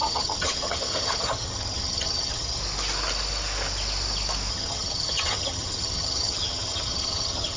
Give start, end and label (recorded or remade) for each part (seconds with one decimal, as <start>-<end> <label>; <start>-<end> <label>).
0.0-2.6 remade; 2.6-4.5 recorded; 4.5-7.6 remade